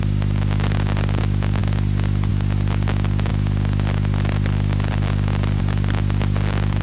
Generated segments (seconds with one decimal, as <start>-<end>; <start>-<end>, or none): none

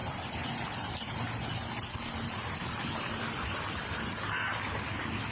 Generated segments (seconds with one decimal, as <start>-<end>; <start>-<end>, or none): none

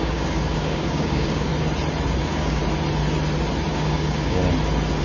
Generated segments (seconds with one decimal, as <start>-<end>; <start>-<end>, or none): 0.0-1.5; 2.2-2.6; 3.7-4.4

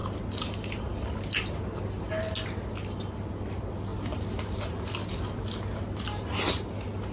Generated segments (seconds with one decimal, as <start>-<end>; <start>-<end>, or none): none

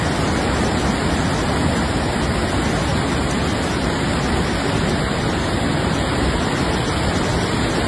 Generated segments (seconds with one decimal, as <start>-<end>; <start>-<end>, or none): none

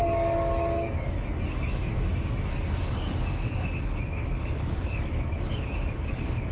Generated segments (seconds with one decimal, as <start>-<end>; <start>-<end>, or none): 0.0-6.5

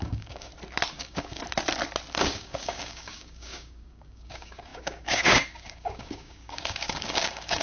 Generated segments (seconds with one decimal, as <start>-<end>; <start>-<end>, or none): 0.0-0.5; 1.0-1.4; 2.2-7.6

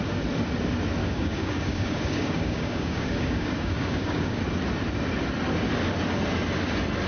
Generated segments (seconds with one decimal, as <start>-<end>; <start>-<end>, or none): 1.0-4.4